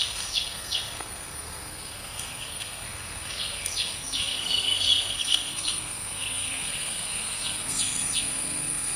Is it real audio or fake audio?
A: fake